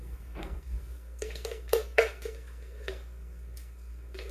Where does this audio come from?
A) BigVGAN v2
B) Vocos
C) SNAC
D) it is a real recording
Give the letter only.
C